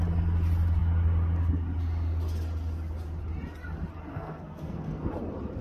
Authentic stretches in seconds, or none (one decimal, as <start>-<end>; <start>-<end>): 0.0-4.1; 5.1-5.6